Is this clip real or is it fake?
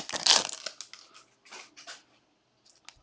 real